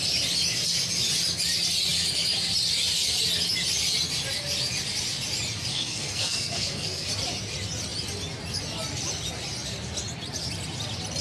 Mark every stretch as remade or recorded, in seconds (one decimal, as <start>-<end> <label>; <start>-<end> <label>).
0.0-5.7 recorded; 5.7-7.1 remade; 7.1-11.2 recorded